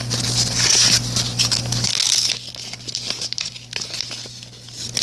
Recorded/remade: recorded